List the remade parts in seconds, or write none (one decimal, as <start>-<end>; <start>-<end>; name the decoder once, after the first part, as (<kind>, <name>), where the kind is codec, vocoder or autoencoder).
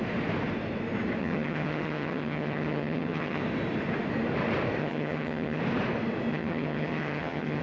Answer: 1.2-3.4 (vocoder, HiFi-GAN); 4.8-5.6; 6.3-7.6